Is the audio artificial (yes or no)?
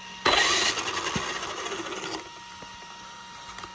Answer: no